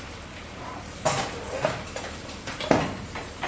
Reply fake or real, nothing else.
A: fake